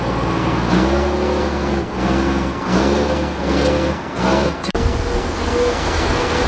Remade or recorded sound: remade